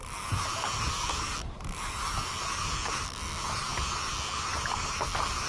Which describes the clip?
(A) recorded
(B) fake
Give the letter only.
A